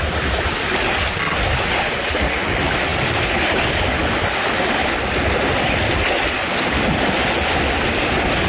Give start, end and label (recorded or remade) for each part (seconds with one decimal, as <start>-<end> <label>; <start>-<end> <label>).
0.0-8.5 recorded